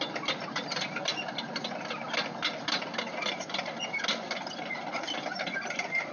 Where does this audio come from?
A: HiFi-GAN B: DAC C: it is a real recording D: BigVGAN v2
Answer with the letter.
C